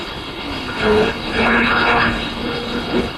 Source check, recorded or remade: remade